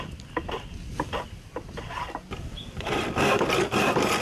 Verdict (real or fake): real